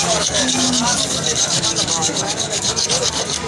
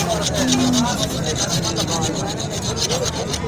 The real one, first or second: second